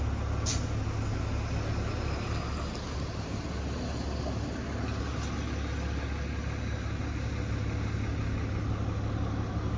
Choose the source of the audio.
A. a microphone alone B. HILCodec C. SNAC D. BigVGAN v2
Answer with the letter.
A